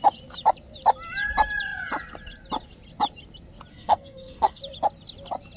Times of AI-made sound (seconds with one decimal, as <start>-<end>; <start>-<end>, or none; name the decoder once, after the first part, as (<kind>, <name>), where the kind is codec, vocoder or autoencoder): 3.7-4.6 (codec, SNAC)